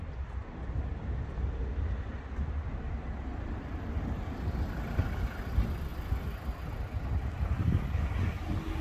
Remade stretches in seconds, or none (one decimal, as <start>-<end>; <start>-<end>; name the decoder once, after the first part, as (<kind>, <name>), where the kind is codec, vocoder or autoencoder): none